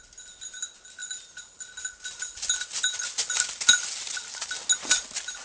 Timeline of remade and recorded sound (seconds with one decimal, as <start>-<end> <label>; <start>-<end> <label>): 0.0-5.4 recorded